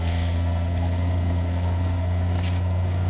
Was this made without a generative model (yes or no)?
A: no